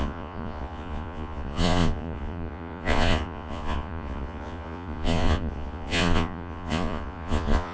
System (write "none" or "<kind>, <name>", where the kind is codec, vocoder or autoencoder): vocoder, Vocos